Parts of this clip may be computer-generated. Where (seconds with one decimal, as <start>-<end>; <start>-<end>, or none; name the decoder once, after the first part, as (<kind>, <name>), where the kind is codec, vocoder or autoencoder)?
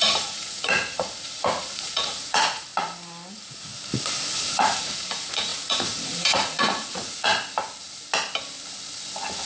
0.0-2.7 (vocoder, Vocos); 3.3-3.7; 4.3-7.3